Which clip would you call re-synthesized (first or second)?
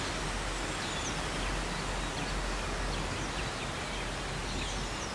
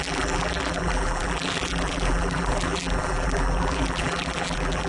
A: second